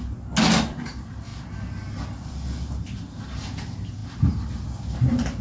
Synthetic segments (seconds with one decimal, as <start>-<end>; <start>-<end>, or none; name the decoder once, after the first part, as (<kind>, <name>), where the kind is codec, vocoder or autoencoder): none